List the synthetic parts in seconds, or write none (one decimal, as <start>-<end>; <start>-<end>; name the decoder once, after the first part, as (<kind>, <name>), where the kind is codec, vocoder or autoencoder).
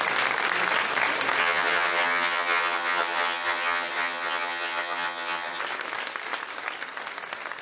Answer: 1.4-5.6 (vocoder, HiFi-GAN)